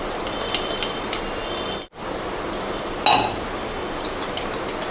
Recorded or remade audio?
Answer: recorded